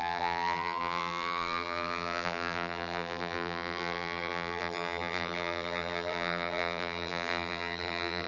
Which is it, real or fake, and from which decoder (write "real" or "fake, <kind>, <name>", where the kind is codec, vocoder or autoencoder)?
fake, vocoder, BigVGAN v2